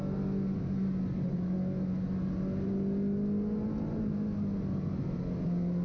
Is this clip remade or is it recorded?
recorded